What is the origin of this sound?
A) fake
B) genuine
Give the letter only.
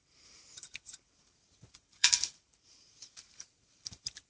A